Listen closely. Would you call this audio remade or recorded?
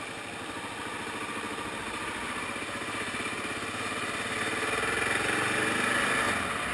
recorded